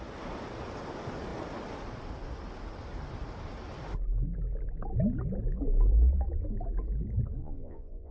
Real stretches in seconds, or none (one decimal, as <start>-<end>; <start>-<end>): 0.0-7.4